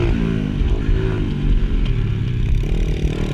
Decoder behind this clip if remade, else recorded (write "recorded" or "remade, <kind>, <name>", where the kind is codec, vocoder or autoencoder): recorded